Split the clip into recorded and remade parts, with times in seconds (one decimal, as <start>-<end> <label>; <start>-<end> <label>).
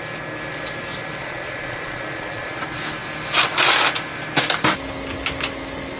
0.0-1.2 recorded; 1.2-2.6 remade; 2.6-6.0 recorded